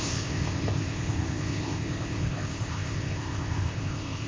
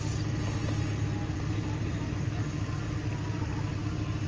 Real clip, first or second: second